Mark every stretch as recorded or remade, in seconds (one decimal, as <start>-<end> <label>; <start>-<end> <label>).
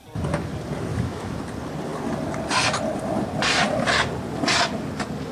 0.0-0.9 recorded; 0.9-1.4 remade; 1.4-5.3 recorded